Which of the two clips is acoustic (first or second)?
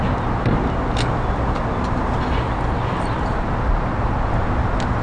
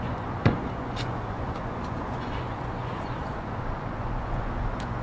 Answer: first